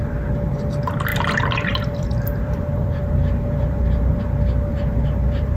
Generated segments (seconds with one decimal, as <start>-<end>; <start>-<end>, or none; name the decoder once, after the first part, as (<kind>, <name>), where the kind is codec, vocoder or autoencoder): 1.1-4.2 (vocoder, BigVGAN v2); 4.7-5.6